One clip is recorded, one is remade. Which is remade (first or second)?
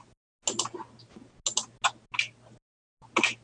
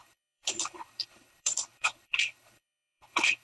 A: second